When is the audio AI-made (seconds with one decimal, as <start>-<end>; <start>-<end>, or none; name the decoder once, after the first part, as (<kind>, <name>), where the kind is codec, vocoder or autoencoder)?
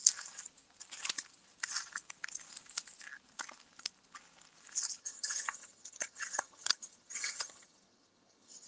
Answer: 5.0-8.7 (vocoder, HiFi-GAN)